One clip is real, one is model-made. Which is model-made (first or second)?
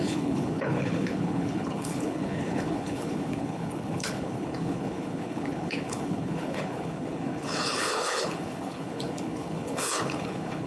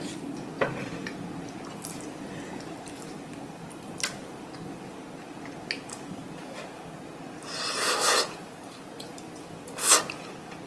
first